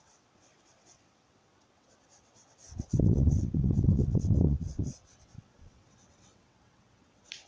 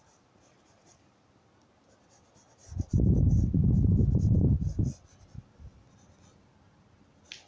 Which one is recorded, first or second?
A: second